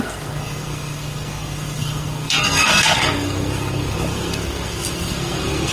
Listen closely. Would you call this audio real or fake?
fake